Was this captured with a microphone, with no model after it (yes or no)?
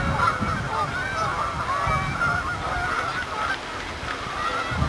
yes